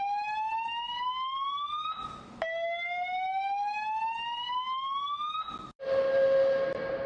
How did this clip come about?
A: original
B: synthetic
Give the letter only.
A